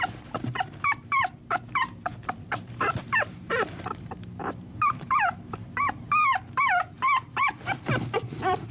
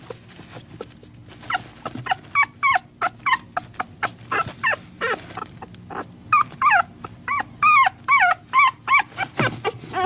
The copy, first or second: first